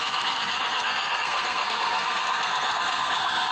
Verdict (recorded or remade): remade